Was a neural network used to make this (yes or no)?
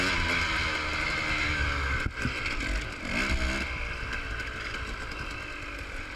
no